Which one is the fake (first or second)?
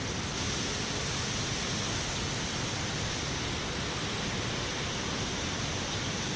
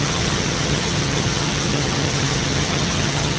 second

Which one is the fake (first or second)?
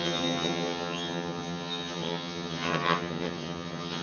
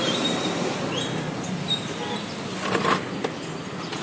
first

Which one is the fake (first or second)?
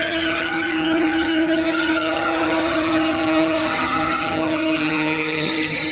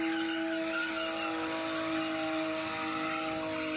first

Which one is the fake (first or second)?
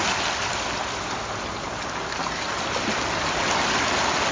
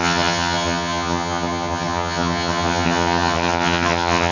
second